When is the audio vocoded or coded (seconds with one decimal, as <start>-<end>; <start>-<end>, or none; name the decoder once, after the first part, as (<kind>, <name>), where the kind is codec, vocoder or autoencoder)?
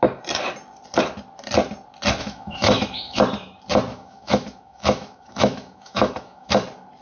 2.2-3.2 (autoencoder, DAC-VAE); 3.9-6.5